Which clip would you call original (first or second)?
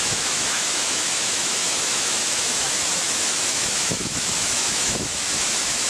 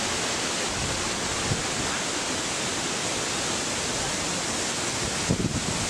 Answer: second